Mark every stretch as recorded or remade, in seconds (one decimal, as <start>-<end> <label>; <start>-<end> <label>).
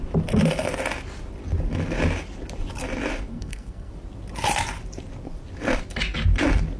0.0-3.3 recorded; 3.3-3.9 remade; 3.9-6.8 recorded